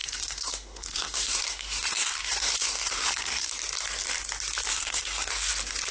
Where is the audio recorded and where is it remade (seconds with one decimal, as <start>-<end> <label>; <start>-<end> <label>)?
0.0-3.5 remade; 3.5-4.7 recorded; 4.7-5.3 remade; 5.3-5.9 recorded